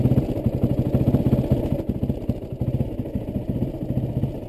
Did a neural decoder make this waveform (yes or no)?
no